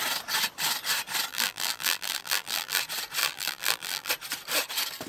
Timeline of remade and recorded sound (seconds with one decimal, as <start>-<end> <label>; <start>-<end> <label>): 0.0-1.3 recorded; 1.3-2.8 remade; 2.8-3.2 recorded; 3.2-4.1 remade; 4.1-5.1 recorded